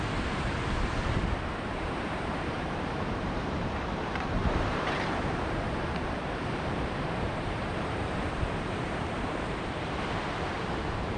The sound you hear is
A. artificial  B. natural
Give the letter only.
A